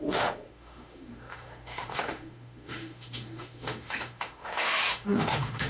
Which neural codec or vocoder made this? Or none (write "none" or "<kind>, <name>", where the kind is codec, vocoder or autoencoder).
autoencoder, DAC-VAE